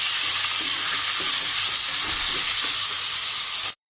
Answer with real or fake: real